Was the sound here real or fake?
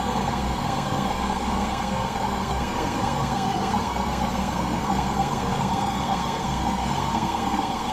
fake